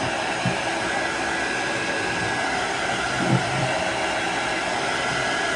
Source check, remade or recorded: recorded